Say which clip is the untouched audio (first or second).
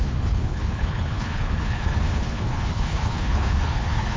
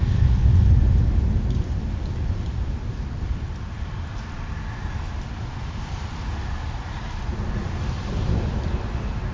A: second